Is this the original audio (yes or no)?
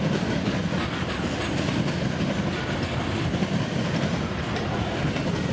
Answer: yes